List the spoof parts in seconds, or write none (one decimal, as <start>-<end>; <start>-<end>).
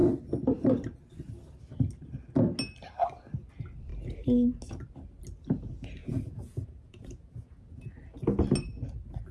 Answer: 6.0-7.9